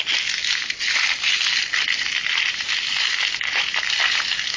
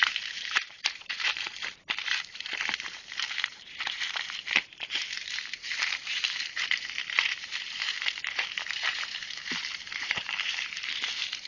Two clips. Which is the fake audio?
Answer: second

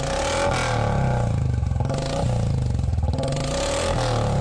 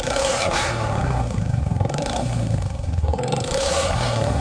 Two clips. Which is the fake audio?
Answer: second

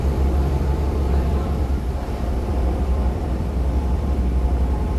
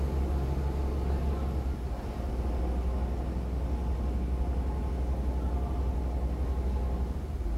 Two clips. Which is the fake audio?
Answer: first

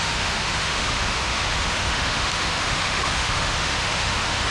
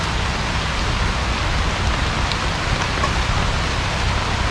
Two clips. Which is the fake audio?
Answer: first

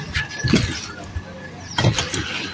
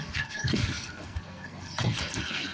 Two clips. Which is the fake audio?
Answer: second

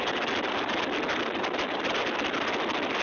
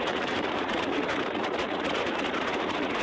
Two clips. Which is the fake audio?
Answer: second